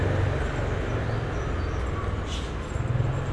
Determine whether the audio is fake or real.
real